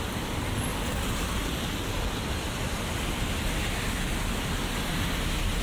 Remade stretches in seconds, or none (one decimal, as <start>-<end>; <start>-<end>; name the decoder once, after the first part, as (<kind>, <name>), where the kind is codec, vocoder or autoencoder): none